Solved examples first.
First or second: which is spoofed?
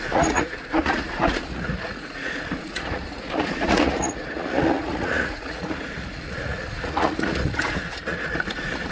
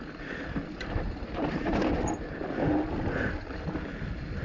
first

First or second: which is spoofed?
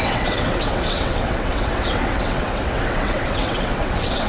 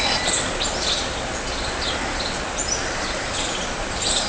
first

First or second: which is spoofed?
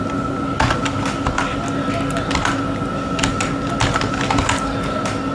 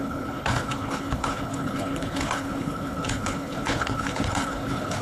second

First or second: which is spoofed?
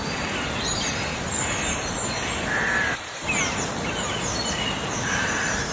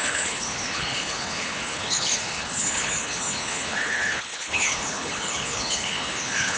second